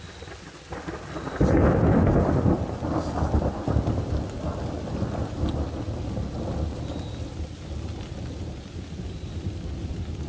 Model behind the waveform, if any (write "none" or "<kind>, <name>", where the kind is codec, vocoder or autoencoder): none